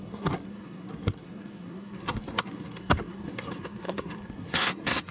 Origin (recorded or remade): remade